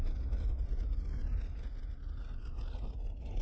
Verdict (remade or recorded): recorded